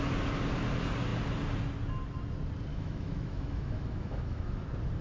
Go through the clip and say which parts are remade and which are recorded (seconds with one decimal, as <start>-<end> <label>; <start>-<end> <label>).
0.0-2.7 recorded; 2.7-4.6 remade; 4.6-5.0 recorded